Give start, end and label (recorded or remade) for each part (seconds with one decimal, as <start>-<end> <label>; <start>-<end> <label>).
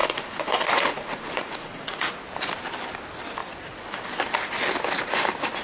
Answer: 0.0-2.1 remade; 2.1-5.6 recorded